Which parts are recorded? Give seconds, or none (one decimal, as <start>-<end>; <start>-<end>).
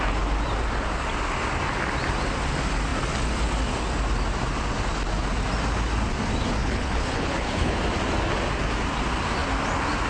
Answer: 0.0-6.6; 7.8-10.1